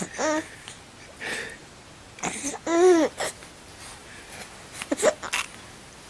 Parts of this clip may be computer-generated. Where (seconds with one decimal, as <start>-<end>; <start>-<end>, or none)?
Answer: none